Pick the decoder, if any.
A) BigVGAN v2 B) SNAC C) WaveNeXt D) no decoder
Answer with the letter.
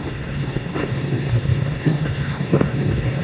B